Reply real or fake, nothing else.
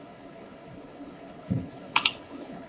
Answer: fake